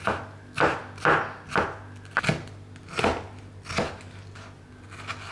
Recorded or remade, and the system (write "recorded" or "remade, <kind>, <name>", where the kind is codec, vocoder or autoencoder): recorded